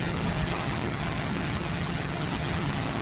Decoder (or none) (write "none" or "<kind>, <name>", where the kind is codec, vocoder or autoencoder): vocoder, HiFi-GAN